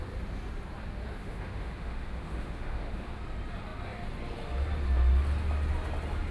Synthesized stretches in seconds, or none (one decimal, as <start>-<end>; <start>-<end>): 1.2-3.2